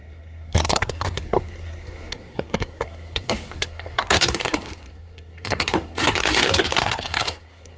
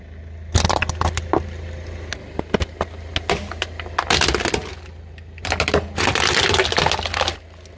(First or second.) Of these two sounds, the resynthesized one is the first